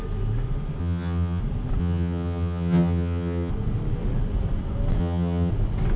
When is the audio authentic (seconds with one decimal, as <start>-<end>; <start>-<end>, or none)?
0.0-0.8; 1.4-1.8; 3.5-5.0; 5.5-6.0